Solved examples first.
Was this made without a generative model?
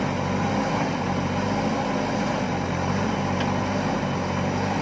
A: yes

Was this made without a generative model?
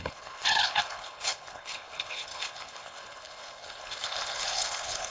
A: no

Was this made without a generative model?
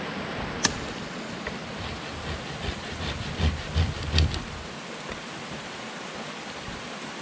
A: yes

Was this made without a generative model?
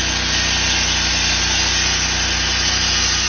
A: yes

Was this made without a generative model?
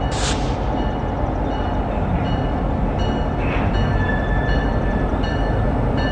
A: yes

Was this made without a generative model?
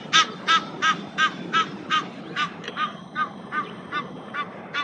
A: no